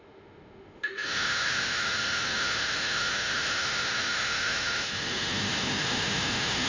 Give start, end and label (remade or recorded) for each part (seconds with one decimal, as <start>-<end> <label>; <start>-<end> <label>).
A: 0.0-6.7 remade